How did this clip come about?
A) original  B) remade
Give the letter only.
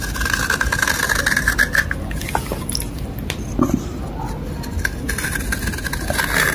A